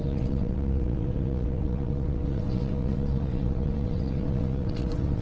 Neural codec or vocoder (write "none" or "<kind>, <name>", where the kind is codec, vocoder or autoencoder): vocoder, WaveNeXt